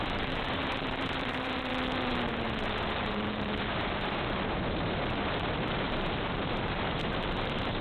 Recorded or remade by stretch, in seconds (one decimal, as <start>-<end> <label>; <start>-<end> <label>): 0.0-1.7 remade; 1.7-2.3 recorded; 2.3-7.8 remade